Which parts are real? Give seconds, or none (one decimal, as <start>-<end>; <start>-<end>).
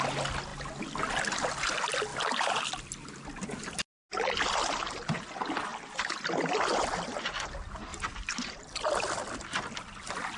0.0-2.1; 2.6-7.9; 8.6-10.4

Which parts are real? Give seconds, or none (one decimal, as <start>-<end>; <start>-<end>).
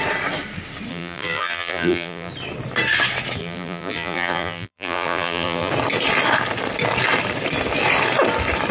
0.0-0.9; 2.3-3.4; 5.7-8.7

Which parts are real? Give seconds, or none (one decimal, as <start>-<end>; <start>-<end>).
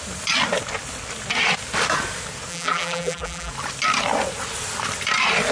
0.0-2.5; 3.5-5.5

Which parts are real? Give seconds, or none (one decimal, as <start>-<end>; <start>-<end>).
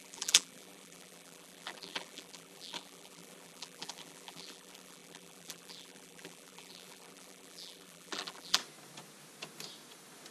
8.6-10.3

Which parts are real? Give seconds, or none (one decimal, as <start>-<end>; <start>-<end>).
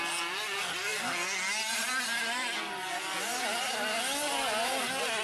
0.0-5.2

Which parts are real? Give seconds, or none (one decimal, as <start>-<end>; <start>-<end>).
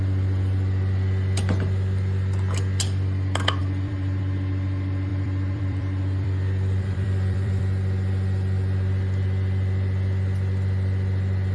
0.0-3.6; 4.2-5.1; 7.6-11.5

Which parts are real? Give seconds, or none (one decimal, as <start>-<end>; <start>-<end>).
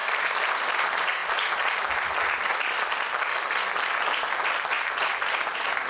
0.5-5.9